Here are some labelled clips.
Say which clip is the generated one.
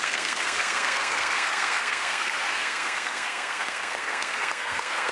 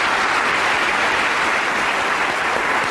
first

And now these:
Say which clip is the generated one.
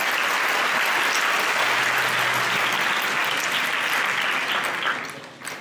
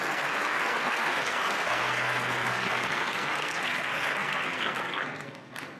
second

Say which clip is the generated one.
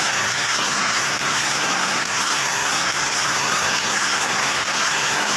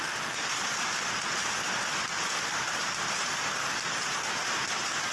first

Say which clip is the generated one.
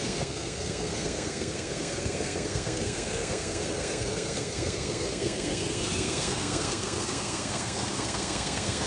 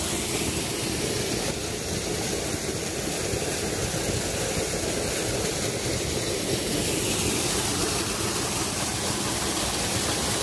first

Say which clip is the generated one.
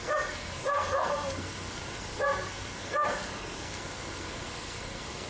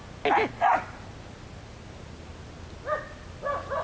first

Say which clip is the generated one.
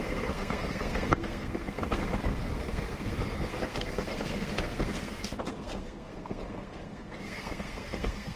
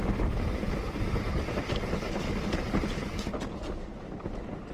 first